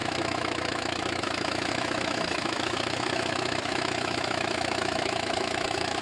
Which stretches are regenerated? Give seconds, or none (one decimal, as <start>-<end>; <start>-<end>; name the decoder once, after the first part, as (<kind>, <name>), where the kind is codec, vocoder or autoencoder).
0.0-6.0 (autoencoder, DAC-VAE)